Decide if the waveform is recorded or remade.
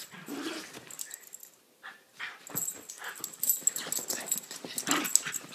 recorded